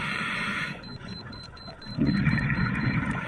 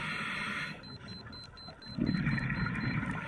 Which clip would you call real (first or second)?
second